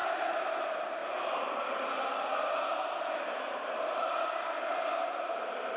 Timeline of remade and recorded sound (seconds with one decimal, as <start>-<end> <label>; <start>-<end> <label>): 0.0-5.8 recorded